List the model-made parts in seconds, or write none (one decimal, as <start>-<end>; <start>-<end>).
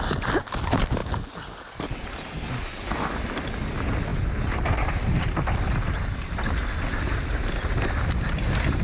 none